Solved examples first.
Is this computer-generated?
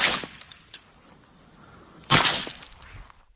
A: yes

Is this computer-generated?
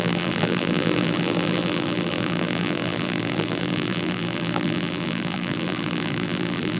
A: yes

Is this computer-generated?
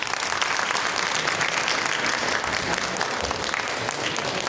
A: no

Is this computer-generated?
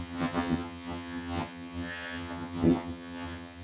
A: yes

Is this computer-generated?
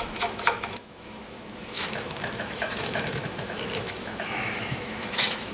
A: yes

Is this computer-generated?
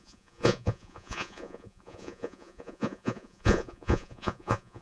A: yes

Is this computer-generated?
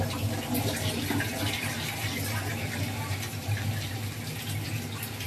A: no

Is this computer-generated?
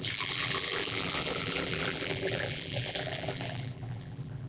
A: yes